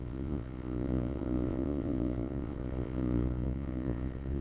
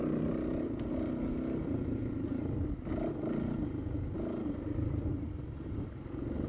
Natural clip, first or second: second